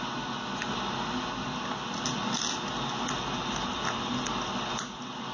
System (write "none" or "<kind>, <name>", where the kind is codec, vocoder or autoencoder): none